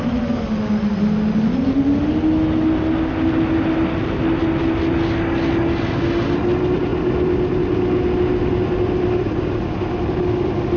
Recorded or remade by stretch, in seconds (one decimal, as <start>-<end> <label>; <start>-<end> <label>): 0.0-10.8 recorded